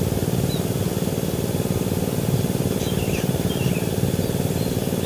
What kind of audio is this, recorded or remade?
recorded